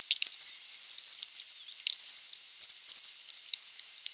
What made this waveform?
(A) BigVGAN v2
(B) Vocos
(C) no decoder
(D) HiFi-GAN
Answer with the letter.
C